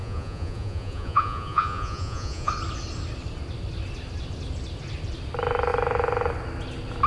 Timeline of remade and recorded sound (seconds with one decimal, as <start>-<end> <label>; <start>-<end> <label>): 0.0-2.5 remade; 2.5-7.1 recorded